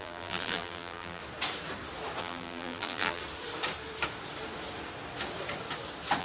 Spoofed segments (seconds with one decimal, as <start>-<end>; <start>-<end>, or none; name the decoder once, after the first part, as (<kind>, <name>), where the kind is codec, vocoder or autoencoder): 0.0-1.2 (vocoder, BigVGAN v2); 2.2-3.2